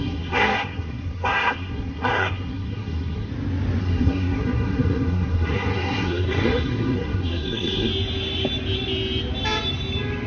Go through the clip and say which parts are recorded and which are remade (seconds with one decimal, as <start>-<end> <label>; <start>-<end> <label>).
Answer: 0.0-3.3 remade; 3.3-3.8 recorded; 3.8-7.9 remade; 7.9-10.3 recorded